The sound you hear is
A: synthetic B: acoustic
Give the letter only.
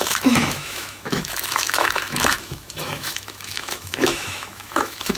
A